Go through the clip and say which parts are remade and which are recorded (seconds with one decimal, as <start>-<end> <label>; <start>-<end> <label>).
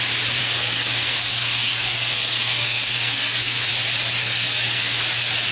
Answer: 0.0-0.4 recorded; 0.4-3.7 remade; 3.7-4.2 recorded; 4.2-5.0 remade; 5.0-5.5 recorded